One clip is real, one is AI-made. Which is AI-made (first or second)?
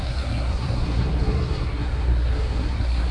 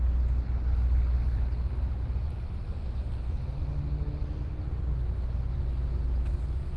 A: first